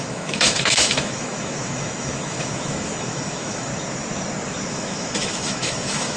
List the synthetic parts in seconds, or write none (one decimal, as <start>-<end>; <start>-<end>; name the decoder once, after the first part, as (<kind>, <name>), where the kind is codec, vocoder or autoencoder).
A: 0.0-3.7 (autoencoder, DAC-VAE); 4.7-6.2